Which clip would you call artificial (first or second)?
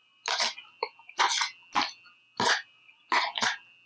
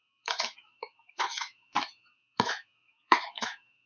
second